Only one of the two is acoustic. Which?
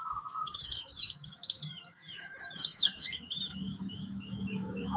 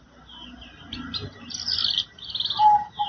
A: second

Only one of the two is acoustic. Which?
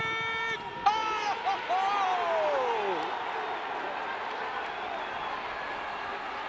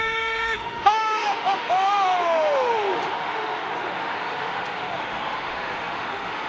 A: first